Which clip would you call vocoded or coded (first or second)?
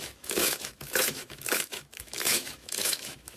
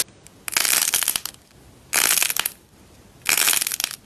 first